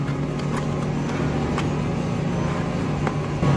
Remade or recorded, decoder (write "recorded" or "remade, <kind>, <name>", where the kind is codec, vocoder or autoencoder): recorded